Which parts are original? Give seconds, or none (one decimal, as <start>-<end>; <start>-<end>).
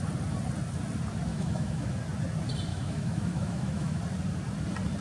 0.0-1.3; 1.9-2.7; 4.0-5.0